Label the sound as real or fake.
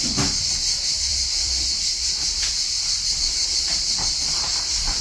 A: fake